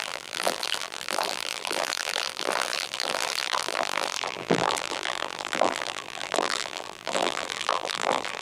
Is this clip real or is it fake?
fake